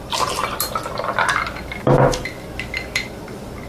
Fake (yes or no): no